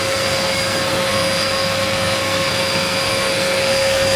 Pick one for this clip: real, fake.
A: fake